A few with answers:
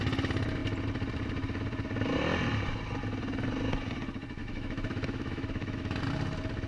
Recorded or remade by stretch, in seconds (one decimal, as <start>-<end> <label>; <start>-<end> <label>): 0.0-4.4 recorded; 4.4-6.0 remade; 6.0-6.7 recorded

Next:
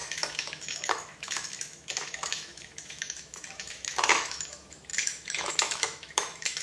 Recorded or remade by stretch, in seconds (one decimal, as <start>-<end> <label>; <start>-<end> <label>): 0.0-6.6 remade

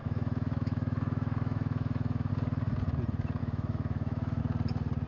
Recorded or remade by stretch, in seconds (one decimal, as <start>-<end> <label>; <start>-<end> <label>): 0.0-2.3 remade; 2.3-3.4 recorded; 3.4-4.4 remade; 4.4-5.1 recorded